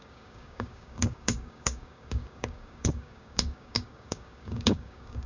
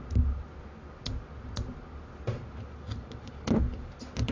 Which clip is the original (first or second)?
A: second